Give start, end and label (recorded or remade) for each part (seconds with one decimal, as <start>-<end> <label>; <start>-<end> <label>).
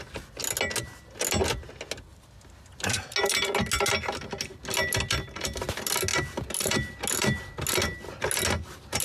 0.0-9.0 recorded